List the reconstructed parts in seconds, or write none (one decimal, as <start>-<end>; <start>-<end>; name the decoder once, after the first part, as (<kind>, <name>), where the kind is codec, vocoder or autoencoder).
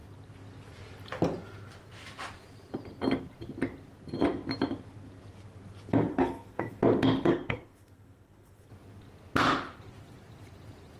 6.1-6.8 (codec, SNAC); 7.3-8.7